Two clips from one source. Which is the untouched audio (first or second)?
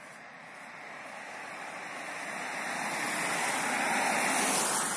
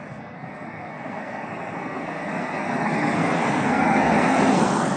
first